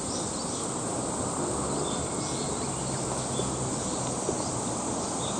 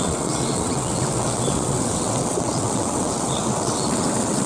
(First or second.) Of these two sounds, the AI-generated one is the second